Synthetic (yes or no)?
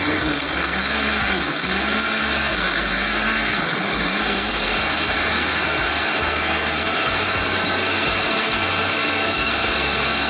yes